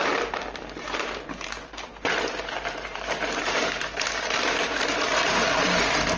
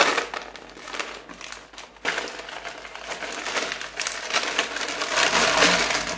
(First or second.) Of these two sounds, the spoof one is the first